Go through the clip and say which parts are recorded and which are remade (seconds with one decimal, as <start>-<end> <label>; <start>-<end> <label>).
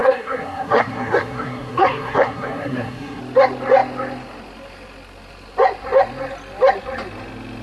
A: 0.0-3.2 remade; 3.2-7.6 recorded